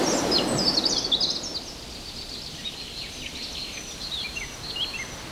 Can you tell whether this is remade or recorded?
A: recorded